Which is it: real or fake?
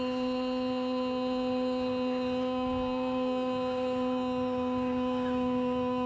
fake